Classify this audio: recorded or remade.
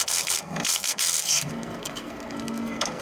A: remade